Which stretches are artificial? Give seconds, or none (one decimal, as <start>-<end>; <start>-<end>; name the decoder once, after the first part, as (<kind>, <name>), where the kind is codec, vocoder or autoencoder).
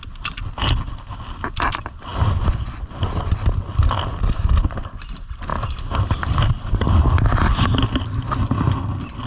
none